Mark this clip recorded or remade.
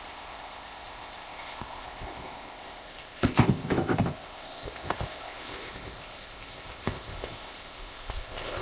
remade